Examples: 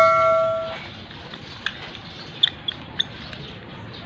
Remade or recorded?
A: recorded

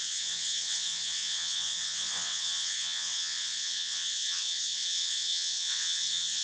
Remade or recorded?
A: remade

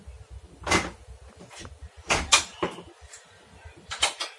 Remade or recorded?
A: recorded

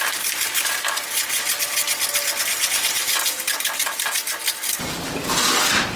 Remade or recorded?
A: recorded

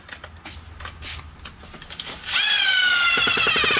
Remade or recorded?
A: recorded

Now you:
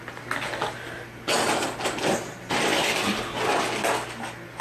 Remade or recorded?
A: recorded